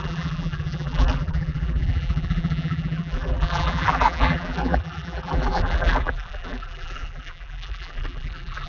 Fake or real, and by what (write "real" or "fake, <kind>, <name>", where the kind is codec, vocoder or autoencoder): fake, vocoder, BigVGAN v2